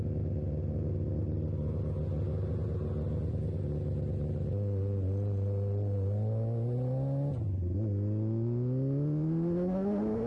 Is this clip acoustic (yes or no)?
yes